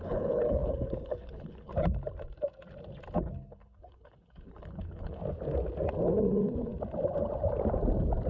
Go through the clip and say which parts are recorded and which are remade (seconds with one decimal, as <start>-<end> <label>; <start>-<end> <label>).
0.0-1.7 remade; 1.7-3.3 recorded; 3.3-5.2 remade; 5.2-6.1 recorded; 6.1-6.7 remade; 6.7-8.3 recorded